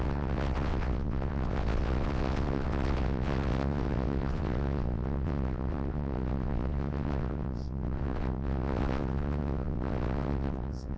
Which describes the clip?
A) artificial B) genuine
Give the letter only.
A